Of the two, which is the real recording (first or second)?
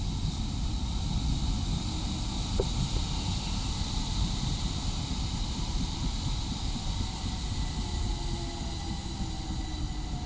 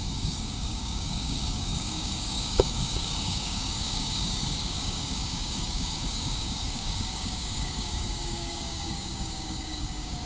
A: first